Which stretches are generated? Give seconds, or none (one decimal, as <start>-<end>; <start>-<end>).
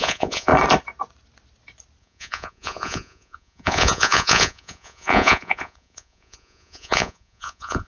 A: 0.0-0.5; 2.0-7.9